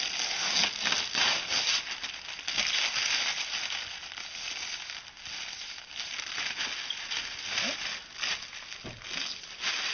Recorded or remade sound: recorded